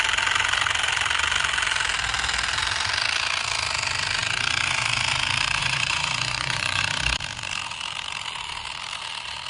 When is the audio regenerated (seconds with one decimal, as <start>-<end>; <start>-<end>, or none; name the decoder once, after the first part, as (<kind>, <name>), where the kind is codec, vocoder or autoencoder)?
5.6-6.8 (vocoder, Vocos)